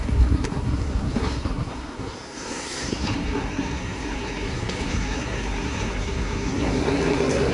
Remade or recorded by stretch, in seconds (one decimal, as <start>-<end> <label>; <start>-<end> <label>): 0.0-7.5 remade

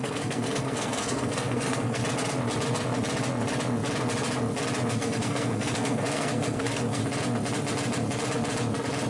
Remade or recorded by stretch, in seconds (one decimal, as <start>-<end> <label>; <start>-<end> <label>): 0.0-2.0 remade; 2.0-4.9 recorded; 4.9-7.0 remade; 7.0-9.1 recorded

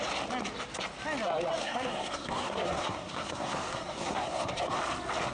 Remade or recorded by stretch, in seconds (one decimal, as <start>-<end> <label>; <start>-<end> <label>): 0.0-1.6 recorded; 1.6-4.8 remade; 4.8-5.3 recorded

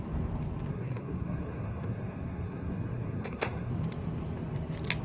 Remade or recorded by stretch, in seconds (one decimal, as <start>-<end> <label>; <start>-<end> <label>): 0.0-0.7 recorded; 0.7-3.7 remade; 3.7-5.0 recorded

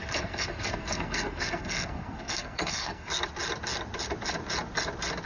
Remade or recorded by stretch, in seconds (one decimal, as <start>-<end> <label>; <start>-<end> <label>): 0.0-3.1 remade; 3.1-5.3 recorded

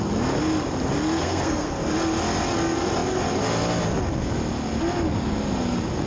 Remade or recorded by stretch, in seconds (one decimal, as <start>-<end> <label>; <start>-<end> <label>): 0.0-1.2 recorded; 1.2-1.7 remade; 1.7-6.1 recorded

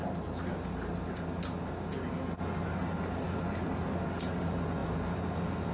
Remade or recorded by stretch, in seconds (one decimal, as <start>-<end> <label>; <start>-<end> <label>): 0.0-5.7 recorded

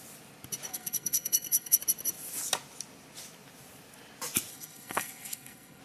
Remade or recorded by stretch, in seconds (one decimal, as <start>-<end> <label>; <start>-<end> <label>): 0.0-0.7 recorded; 0.7-1.8 remade; 1.8-4.5 recorded; 4.5-5.8 remade